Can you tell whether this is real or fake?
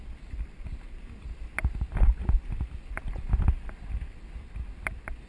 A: real